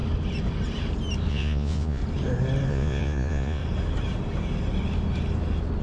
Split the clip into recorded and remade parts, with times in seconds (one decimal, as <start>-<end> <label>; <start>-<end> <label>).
0.0-1.3 recorded; 1.3-2.0 remade; 2.0-2.7 recorded; 2.7-3.6 remade; 3.6-5.8 recorded